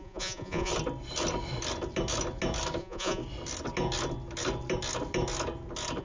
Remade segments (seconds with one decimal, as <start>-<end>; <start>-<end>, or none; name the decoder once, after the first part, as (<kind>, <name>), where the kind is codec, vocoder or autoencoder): 0.0-0.7 (vocoder, Vocos); 2.8-3.2

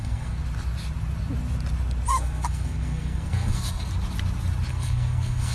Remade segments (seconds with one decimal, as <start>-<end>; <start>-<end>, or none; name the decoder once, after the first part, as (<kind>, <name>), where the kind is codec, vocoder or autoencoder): 0.0-0.4 (codec, SNAC); 2.1-3.9; 4.7-5.5

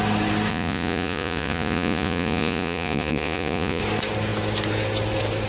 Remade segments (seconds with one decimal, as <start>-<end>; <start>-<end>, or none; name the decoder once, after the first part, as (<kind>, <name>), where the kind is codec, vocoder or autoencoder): 0.5-3.8 (vocoder, Vocos)

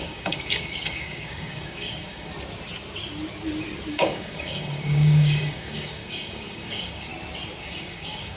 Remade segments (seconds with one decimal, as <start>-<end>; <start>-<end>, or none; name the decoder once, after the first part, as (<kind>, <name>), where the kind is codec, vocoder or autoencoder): 0.0-2.3 (codec, DAC); 3.9-7.1; 7.6-8.4

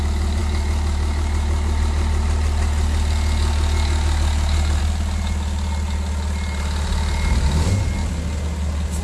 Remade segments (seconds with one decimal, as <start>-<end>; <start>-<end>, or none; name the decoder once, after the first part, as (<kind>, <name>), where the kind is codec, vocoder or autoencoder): none

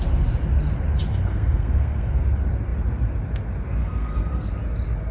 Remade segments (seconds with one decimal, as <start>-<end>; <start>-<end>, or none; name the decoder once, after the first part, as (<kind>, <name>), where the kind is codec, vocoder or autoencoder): 1.3-2.2 (codec, SNAC); 3.8-4.5

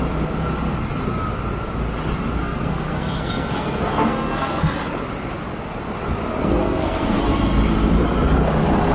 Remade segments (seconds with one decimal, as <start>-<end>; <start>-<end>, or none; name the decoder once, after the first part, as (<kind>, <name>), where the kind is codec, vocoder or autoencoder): 2.4-4.6 (codec, SNAC); 6.4-7.2